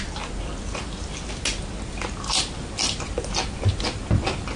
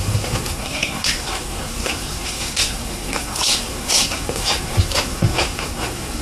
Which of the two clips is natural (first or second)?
first